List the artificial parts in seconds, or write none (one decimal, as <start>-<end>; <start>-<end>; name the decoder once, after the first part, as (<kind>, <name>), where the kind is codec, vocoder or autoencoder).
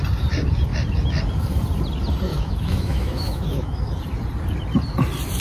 2.3-3.9 (autoencoder, DAC-VAE)